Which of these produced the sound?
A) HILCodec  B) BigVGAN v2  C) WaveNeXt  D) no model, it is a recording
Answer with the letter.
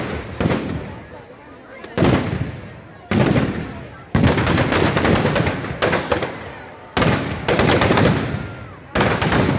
D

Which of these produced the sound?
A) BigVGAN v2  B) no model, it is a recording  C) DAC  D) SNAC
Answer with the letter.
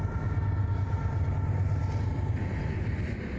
B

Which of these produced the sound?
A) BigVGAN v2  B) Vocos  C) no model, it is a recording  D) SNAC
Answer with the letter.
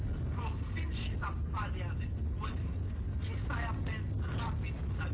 C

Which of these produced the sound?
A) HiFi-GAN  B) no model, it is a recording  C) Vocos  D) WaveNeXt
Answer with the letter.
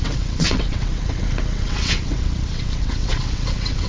D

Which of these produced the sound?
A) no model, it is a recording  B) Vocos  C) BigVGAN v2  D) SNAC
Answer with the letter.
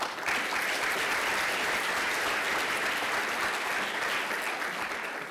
A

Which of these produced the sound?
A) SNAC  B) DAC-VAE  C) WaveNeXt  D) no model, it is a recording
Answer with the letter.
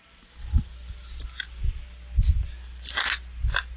D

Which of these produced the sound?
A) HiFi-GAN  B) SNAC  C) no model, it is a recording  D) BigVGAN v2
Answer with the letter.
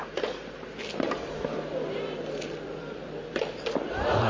D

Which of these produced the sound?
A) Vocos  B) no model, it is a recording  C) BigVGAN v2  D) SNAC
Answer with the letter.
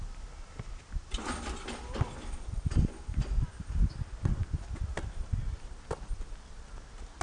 B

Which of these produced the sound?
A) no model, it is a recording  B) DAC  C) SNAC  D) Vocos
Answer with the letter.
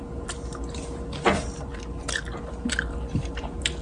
A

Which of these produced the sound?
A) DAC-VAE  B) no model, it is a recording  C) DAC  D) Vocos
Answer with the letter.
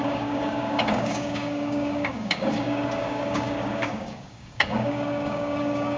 C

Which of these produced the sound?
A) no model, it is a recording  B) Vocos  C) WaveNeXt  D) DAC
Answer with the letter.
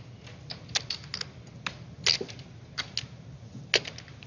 A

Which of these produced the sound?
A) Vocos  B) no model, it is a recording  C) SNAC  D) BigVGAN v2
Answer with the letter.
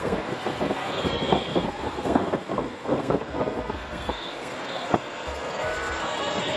C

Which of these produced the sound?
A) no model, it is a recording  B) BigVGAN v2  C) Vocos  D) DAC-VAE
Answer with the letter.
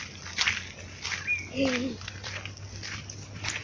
A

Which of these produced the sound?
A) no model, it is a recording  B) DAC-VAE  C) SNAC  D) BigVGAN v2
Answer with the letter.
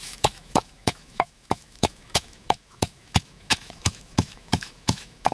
B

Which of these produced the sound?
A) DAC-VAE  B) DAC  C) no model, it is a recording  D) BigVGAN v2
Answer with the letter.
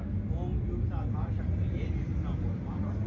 C